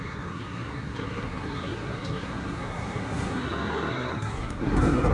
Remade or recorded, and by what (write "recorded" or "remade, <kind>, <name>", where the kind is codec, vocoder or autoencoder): remade, codec, SNAC